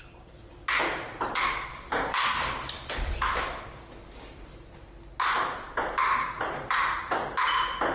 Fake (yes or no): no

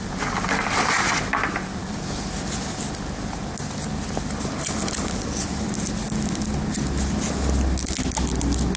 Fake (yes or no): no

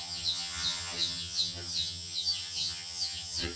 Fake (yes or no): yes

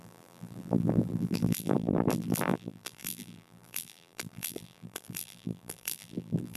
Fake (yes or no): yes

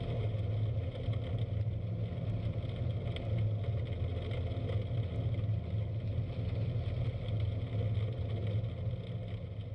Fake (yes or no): no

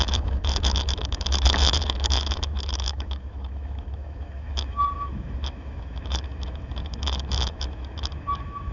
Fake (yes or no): yes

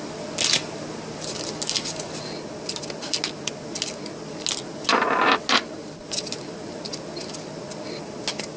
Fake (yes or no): no